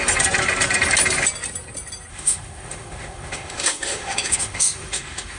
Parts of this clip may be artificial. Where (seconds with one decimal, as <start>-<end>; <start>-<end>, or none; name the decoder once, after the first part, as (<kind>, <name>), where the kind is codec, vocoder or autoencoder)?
2.1-5.4 (autoencoder, DAC-VAE)

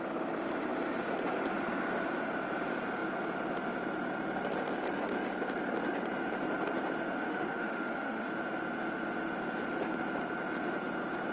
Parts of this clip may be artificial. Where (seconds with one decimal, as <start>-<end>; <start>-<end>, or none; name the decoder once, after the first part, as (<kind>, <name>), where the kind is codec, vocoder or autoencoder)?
7.3-8.3 (autoencoder, DAC-VAE)

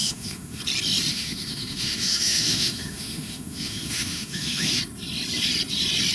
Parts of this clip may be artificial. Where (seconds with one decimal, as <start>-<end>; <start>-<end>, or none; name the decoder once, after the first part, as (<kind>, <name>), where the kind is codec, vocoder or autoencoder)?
0.0-0.6 (autoencoder, DAC-VAE); 1.1-4.8